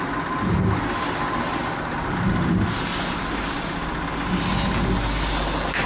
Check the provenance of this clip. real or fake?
real